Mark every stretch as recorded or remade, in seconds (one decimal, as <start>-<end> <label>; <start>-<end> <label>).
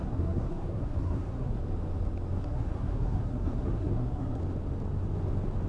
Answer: 0.0-1.6 remade; 1.6-2.4 recorded; 2.4-4.4 remade; 4.4-5.7 recorded